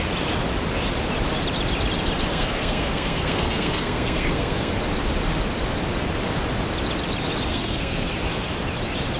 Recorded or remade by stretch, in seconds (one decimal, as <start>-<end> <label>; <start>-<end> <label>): 0.0-2.3 recorded; 2.3-4.7 remade; 4.7-7.5 recorded; 7.5-8.1 remade; 8.1-9.2 recorded

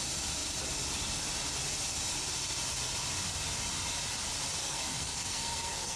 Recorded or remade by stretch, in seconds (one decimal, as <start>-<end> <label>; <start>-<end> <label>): 0.0-4.6 recorded; 4.6-6.0 remade

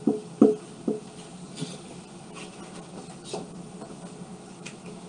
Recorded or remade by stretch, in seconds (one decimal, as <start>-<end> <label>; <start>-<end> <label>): 0.0-4.3 recorded; 4.3-5.1 remade

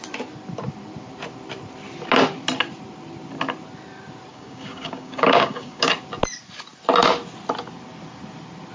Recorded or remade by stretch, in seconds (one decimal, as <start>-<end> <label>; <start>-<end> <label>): 0.0-4.3 recorded; 4.3-5.9 remade; 5.9-8.7 recorded

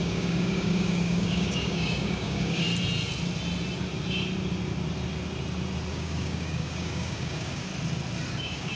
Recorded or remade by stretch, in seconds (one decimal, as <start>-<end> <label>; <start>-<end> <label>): 0.0-2.7 remade; 2.7-5.9 recorded; 5.9-7.7 remade; 7.7-8.4 recorded; 8.4-8.8 remade

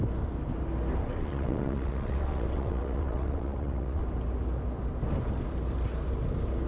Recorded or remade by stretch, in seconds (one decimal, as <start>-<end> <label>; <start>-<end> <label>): 0.0-1.0 recorded; 1.0-4.0 remade; 4.0-6.7 recorded

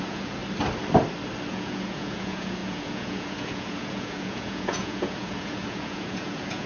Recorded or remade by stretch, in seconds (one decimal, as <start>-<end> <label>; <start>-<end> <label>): 0.0-0.4 remade; 0.4-1.5 recorded; 1.5-6.7 remade

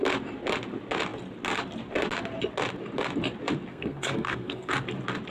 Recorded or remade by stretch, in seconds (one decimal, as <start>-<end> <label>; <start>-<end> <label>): 0.0-3.7 recorded; 3.7-4.7 remade; 4.7-5.3 recorded